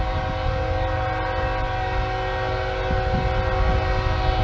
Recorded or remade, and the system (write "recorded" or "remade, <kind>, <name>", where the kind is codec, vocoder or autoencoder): recorded